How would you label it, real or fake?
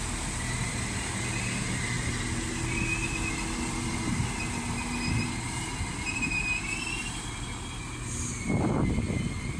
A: real